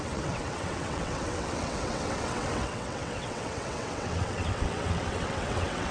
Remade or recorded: remade